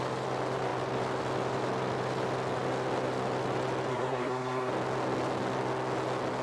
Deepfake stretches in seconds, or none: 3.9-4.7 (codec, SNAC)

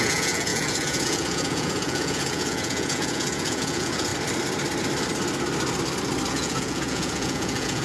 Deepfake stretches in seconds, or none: 0.0-4.1 (vocoder, Vocos); 6.3-7.8

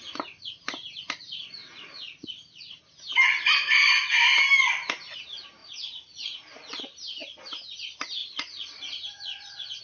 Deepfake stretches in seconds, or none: 1.6-2.8 (vocoder, Vocos); 5.6-6.8; 8.2-9.8

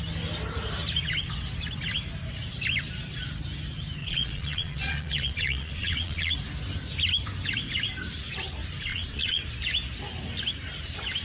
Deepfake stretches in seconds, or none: 4.0-6.3 (vocoder, Vocos); 8.9-9.4

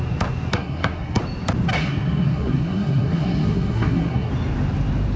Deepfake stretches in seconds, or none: 0.5-1.2 (codec, SNAC); 1.7-4.3

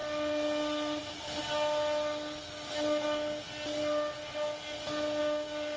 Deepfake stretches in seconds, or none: 5.2-5.8 (codec, DAC)

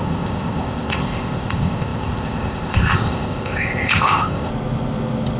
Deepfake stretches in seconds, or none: 0.0-4.5 (codec, ZipCodec)